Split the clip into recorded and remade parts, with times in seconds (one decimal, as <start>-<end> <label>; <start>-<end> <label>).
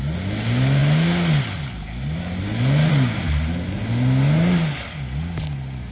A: 0.0-5.9 recorded